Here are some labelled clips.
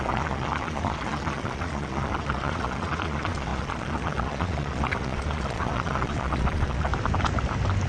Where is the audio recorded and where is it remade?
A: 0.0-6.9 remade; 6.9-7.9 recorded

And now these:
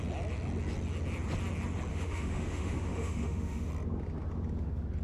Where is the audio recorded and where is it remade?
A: 0.0-1.9 recorded; 1.9-3.7 remade; 3.7-5.0 recorded

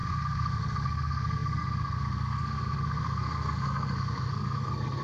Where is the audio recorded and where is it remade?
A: 0.0-5.0 remade